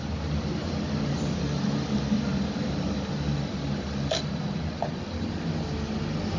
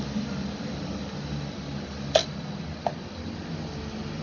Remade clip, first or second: first